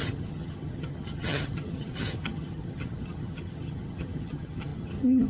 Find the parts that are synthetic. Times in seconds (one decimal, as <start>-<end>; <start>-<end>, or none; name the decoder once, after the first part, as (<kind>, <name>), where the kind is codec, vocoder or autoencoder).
0.0-5.3 (vocoder, HiFi-GAN)